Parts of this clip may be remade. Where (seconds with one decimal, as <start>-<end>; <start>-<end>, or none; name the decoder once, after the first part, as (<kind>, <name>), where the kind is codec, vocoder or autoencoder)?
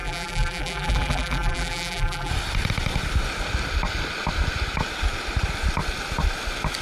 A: 0.0-2.3 (vocoder, BigVGAN v2)